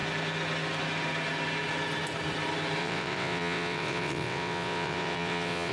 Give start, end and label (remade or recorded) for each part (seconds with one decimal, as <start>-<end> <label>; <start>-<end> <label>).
0.0-2.8 recorded; 2.8-5.7 remade